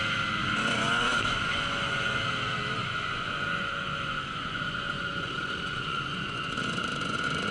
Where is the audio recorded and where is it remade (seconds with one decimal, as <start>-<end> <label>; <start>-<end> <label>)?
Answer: 0.0-0.4 recorded; 0.4-2.2 remade; 2.2-2.8 recorded; 2.8-7.5 remade